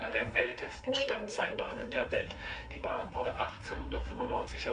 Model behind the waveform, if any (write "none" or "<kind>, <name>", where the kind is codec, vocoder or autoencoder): codec, SNAC